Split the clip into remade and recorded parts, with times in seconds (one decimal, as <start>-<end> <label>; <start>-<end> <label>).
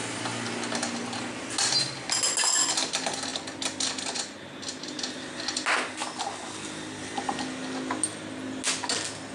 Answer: 0.0-9.3 recorded